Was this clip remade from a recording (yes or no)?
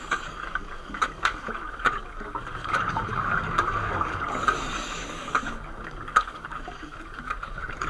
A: yes